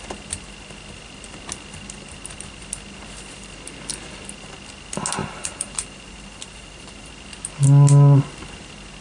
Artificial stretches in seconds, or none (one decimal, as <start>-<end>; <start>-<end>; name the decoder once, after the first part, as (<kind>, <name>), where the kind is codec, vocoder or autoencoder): 5.2-7.1 (vocoder, BigVGAN v2)